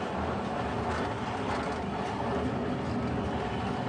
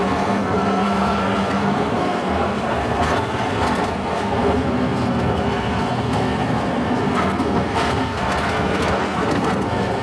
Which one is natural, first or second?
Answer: first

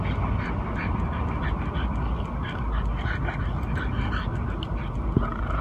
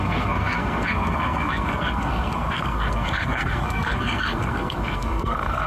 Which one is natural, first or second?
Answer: first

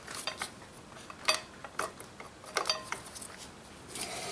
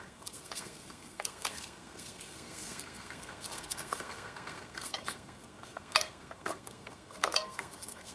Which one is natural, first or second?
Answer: first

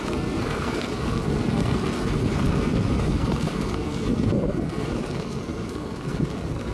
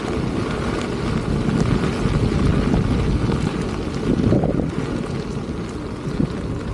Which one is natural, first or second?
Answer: second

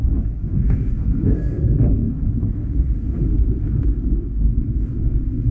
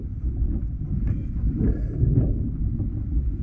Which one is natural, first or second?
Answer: second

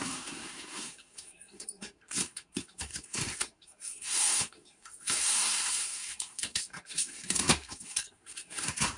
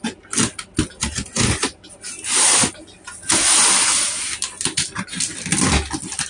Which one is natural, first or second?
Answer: second